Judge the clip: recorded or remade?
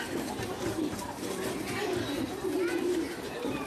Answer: remade